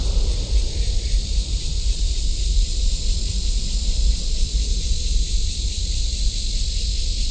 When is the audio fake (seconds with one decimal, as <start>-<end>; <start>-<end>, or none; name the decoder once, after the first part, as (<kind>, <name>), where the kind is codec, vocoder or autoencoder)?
0.0-1.7 (vocoder, BigVGAN v2); 2.6-7.3